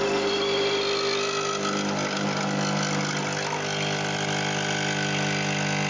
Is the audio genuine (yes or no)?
yes